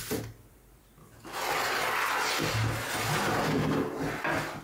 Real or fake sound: real